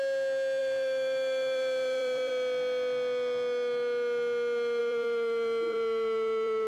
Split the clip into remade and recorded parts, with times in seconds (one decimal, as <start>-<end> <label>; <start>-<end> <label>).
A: 0.0-0.6 recorded; 0.6-2.3 remade; 2.3-4.8 recorded; 4.8-6.7 remade